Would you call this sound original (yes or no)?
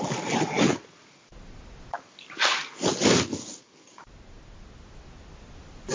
yes